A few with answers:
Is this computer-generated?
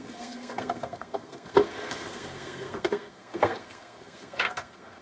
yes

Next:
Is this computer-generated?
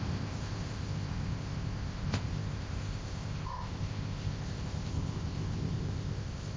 yes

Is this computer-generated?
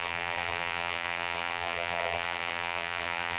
yes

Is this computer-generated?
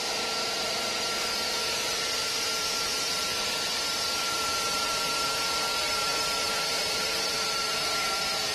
yes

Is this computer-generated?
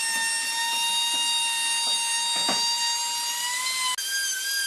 no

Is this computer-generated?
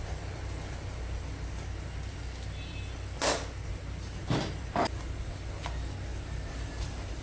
no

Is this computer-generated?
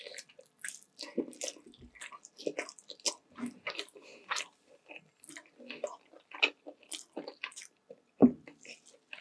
no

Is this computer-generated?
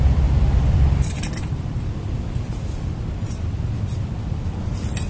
no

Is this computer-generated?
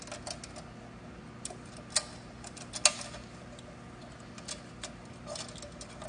no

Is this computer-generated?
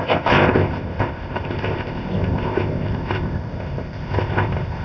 yes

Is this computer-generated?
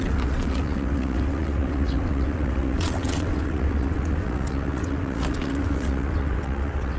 yes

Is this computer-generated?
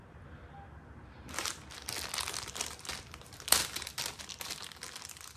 no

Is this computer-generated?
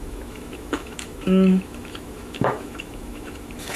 yes